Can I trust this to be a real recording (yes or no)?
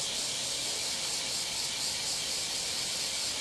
yes